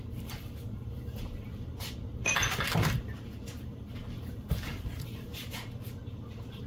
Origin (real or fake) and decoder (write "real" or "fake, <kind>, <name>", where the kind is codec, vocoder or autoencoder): fake, vocoder, BigVGAN v2